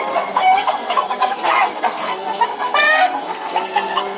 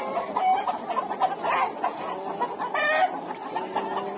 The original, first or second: second